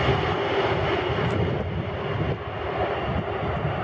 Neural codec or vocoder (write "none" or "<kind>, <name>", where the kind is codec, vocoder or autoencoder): none